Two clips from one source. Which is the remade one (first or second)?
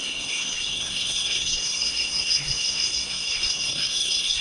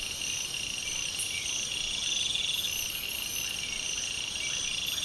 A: first